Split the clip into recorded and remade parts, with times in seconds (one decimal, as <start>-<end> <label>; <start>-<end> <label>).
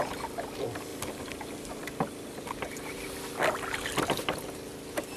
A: 0.0-5.2 recorded